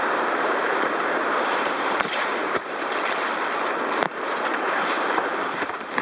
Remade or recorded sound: remade